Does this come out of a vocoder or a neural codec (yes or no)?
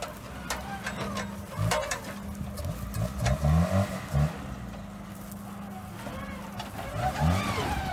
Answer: no